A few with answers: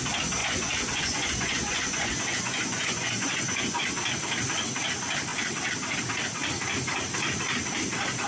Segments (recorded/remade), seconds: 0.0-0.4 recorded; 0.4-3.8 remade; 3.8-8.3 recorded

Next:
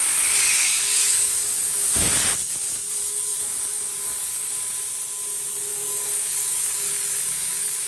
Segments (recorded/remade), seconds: 0.0-4.7 remade; 4.7-5.7 recorded; 5.7-7.9 remade

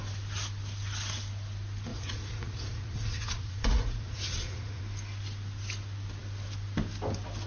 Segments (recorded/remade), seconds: 0.0-1.9 recorded; 1.9-4.8 remade; 4.8-7.5 recorded

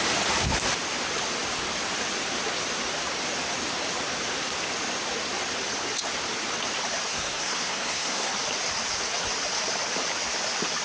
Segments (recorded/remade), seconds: 0.0-7.1 recorded; 7.1-8.3 remade; 8.3-10.8 recorded

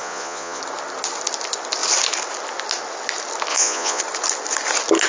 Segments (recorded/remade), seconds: 0.0-0.6 remade; 0.6-3.5 recorded; 3.5-4.0 remade; 4.0-5.1 recorded

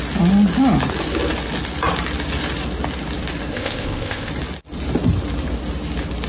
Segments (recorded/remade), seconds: 0.0-3.5 recorded; 3.5-4.3 remade; 4.3-6.3 recorded

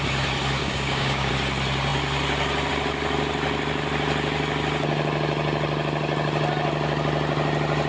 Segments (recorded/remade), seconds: 0.0-0.6 recorded; 0.6-1.3 remade; 1.3-7.9 recorded